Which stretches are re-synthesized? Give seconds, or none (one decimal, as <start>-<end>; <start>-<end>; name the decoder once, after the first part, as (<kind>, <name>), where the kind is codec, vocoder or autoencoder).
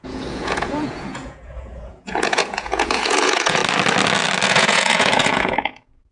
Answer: 0.0-3.6 (vocoder, Vocos); 4.5-6.1